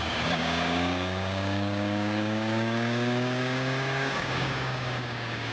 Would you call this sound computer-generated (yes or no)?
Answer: yes